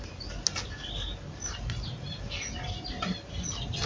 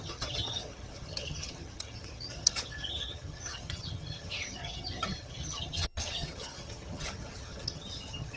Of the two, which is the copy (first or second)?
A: second